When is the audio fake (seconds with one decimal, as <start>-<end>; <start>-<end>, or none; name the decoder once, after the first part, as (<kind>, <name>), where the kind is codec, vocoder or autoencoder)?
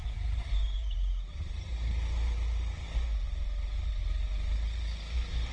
0.0-1.2 (vocoder, BigVGAN v2)